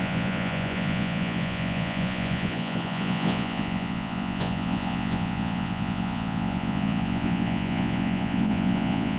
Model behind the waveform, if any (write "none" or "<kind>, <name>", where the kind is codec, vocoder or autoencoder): vocoder, Vocos